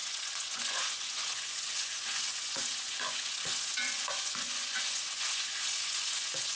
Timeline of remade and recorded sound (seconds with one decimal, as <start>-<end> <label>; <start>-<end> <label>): 0.0-6.6 remade